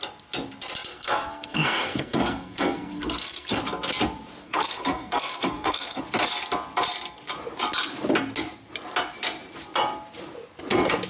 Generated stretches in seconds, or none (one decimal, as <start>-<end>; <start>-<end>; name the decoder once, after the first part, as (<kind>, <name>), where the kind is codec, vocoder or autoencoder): 0.9-3.6 (codec, SNAC); 4.4-6.0